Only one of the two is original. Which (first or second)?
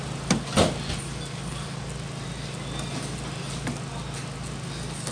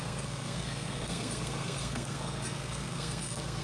first